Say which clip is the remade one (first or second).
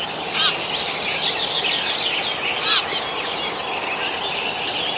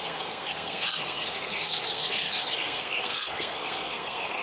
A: second